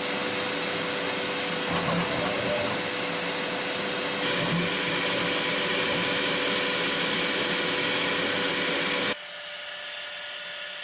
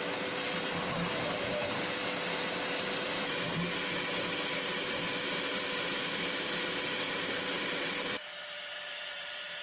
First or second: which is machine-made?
second